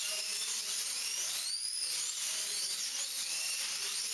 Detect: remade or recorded remade